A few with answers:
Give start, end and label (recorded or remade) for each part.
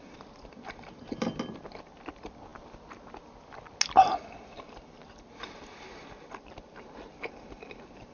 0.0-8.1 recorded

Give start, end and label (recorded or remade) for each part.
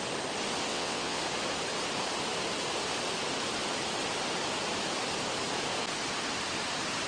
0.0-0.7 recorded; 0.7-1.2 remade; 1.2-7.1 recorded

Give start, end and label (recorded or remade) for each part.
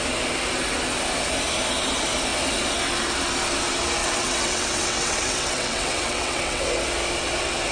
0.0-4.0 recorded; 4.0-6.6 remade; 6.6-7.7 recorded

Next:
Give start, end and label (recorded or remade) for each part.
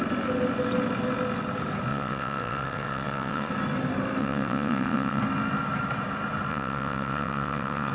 0.0-1.9 recorded; 1.9-3.5 remade; 3.5-4.2 recorded; 4.2-5.2 remade; 5.2-6.5 recorded; 6.5-7.9 remade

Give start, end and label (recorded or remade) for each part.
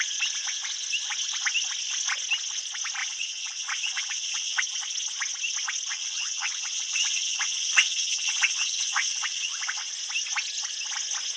0.0-3.0 recorded; 3.0-4.6 remade; 4.6-5.9 recorded; 5.9-9.9 remade; 9.9-11.4 recorded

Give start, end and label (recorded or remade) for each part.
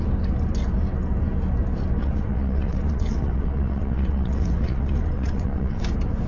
0.0-2.0 recorded; 2.0-5.8 remade; 5.8-6.3 recorded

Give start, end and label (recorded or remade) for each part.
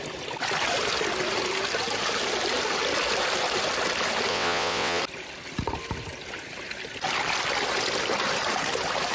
0.0-4.3 recorded; 4.3-5.0 remade; 5.0-9.1 recorded